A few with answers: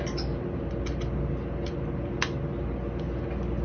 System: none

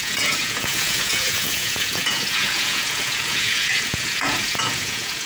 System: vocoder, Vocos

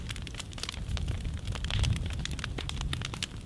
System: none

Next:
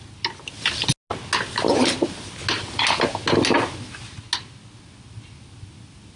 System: none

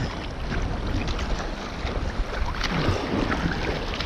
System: none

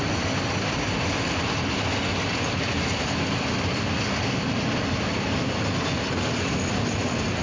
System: none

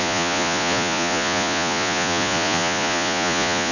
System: vocoder, Vocos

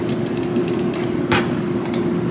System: none